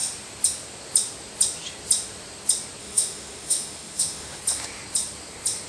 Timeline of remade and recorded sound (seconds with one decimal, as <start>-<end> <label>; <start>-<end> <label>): 0.0-2.8 recorded; 2.8-4.4 remade; 4.4-5.7 recorded